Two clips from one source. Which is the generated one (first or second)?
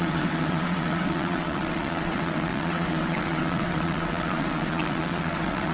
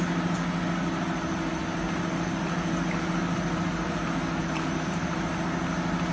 first